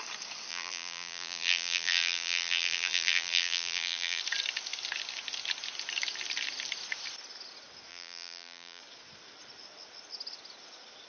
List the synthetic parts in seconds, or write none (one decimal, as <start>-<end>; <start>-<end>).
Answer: 0.5-4.2; 7.9-8.8